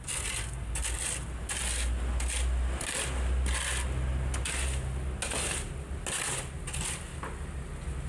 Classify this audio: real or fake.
real